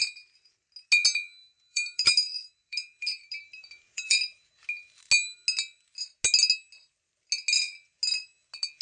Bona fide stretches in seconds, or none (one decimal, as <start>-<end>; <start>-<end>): 0.0-1.4; 4.5-8.8